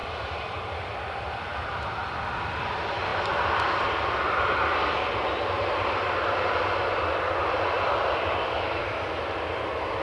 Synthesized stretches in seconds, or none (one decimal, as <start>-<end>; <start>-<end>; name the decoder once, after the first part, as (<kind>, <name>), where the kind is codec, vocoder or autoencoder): none